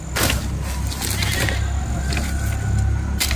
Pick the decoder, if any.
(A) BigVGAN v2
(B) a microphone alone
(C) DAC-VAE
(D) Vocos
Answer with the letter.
B